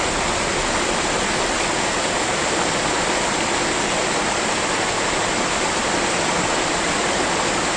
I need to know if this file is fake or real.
real